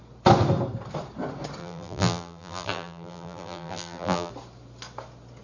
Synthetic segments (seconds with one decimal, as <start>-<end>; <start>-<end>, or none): 1.6-4.3